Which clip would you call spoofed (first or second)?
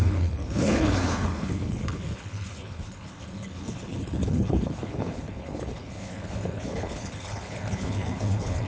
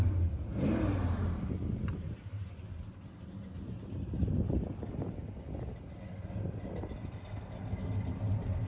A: first